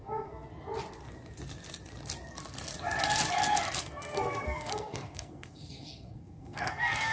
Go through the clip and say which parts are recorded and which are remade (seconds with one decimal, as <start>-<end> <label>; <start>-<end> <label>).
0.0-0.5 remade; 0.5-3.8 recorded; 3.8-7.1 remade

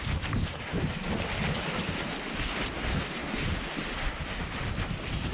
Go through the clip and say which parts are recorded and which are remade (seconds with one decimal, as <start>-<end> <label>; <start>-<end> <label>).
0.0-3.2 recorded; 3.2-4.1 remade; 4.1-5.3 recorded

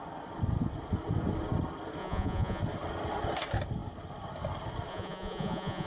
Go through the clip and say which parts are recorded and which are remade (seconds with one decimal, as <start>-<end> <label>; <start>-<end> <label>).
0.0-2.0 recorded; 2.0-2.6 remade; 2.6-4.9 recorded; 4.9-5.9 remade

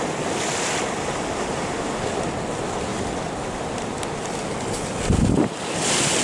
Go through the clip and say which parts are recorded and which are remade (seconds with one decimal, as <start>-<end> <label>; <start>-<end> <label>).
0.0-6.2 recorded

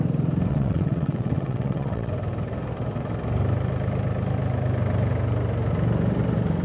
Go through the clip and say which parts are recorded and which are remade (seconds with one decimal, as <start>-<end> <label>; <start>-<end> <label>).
0.0-0.5 recorded; 0.5-2.1 remade; 2.1-6.6 recorded

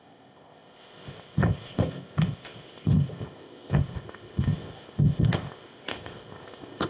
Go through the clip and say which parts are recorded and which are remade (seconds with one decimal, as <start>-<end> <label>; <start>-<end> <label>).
0.0-6.9 remade